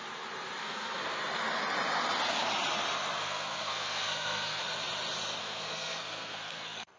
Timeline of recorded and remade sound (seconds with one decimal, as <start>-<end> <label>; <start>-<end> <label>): 0.0-0.6 recorded; 0.6-1.2 remade; 1.2-3.2 recorded; 3.2-4.6 remade; 4.6-5.4 recorded; 5.4-7.0 remade